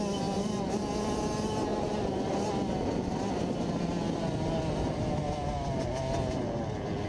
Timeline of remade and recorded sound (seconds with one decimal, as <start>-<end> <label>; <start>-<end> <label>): 0.0-7.1 recorded